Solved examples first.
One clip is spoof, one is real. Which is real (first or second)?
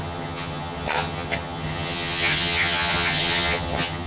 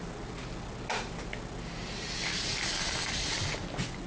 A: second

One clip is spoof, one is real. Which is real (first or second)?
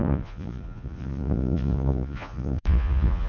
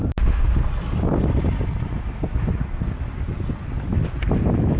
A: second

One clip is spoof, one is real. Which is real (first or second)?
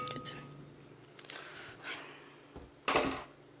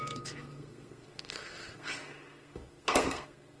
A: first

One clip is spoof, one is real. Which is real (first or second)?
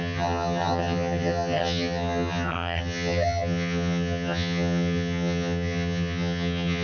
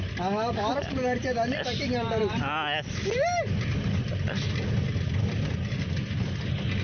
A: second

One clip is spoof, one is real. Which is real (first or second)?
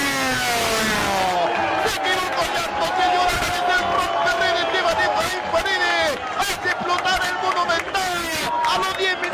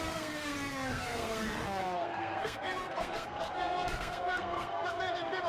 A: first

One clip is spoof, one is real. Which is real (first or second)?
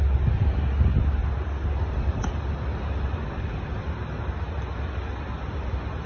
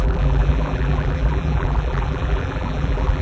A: first